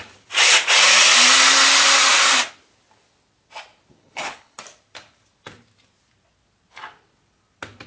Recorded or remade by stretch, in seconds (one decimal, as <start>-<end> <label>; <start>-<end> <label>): 0.0-4.0 recorded; 4.0-4.6 remade; 4.6-7.9 recorded